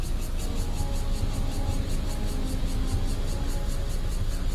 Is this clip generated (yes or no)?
no